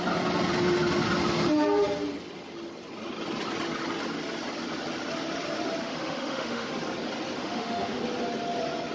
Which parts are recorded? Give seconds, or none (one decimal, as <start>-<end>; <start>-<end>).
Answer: 0.0-5.8; 6.7-7.4; 8.0-8.9